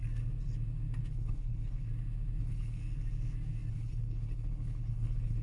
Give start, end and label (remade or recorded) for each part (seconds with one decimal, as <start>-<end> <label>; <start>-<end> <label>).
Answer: 0.0-1.1 recorded; 1.1-1.9 remade; 1.9-2.4 recorded; 2.4-2.8 remade; 2.8-3.7 recorded; 3.7-5.4 remade